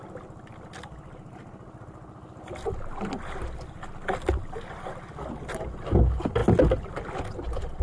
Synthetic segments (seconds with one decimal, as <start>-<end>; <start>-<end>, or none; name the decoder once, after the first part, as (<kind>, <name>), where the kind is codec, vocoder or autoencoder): none